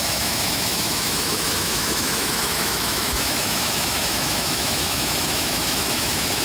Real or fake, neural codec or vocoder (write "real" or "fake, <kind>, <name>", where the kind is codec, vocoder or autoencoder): fake, autoencoder, DAC-VAE